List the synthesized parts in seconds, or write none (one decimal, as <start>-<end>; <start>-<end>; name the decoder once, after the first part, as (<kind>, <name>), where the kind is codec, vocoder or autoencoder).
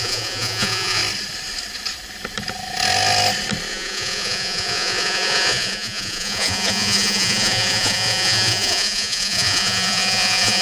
0.0-1.0 (vocoder, Vocos); 3.7-10.6